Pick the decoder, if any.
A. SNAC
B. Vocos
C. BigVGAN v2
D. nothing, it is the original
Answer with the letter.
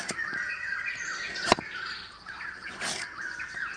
C